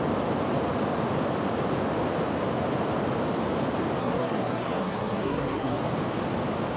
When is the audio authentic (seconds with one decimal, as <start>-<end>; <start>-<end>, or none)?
0.0-4.0; 5.8-6.8